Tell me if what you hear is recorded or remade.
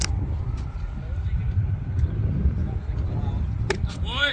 recorded